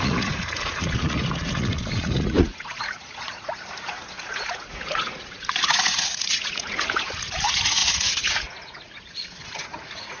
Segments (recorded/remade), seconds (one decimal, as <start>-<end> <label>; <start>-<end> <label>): 0.0-10.2 remade